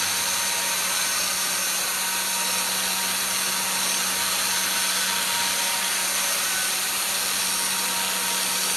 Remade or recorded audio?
recorded